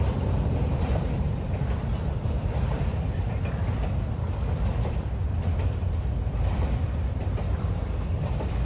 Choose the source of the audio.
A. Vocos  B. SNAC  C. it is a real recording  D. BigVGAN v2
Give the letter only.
D